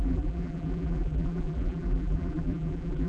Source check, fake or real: fake